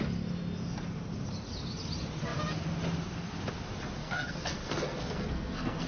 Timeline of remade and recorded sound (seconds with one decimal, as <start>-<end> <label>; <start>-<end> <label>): 0.0-4.0 recorded; 4.0-5.9 remade